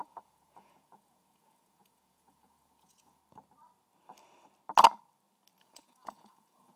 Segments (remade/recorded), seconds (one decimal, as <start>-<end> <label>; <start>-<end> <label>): 0.0-3.2 remade; 3.2-5.6 recorded; 5.6-6.8 remade